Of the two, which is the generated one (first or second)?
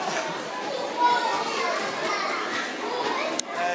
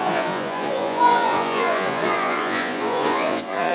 second